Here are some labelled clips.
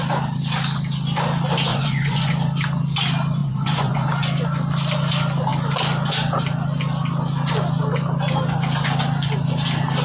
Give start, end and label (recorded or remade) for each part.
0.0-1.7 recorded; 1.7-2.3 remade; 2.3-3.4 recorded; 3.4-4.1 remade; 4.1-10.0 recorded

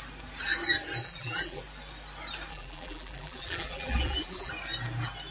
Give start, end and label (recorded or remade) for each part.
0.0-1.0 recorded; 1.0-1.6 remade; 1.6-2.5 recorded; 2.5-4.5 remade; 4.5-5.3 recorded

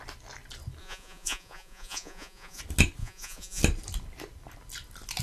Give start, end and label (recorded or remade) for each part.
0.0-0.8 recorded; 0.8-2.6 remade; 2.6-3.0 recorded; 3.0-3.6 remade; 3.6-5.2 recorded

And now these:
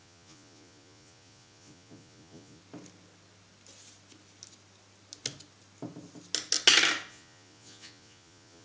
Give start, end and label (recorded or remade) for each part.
0.0-2.6 remade; 2.6-7.1 recorded; 7.1-8.6 remade

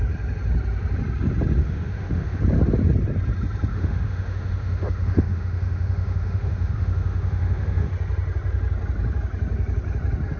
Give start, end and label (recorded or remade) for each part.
0.0-1.6 recorded; 1.6-2.4 remade; 2.4-3.7 recorded; 3.7-7.9 remade; 7.9-10.4 recorded